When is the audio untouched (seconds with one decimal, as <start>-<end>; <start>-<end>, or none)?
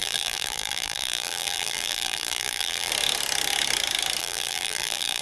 2.9-4.2